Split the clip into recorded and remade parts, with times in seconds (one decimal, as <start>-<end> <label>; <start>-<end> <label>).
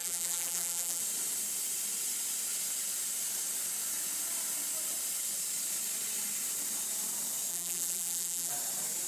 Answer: 0.0-1.0 remade; 1.0-7.5 recorded; 7.5-8.5 remade; 8.5-9.1 recorded